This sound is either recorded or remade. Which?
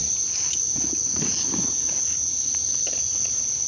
recorded